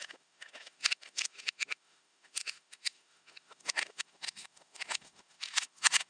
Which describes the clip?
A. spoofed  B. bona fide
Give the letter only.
A